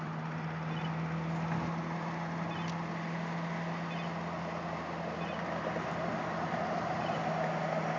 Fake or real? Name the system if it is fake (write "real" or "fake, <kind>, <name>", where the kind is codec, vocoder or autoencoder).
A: real